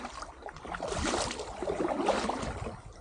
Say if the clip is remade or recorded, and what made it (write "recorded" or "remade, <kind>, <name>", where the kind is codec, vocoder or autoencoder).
recorded